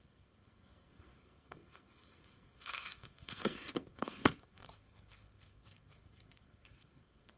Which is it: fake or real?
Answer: fake